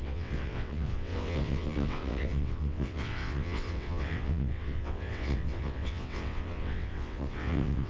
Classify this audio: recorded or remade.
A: remade